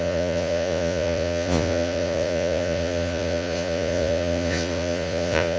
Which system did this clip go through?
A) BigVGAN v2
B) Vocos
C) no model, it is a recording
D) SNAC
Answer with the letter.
B